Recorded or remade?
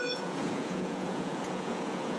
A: remade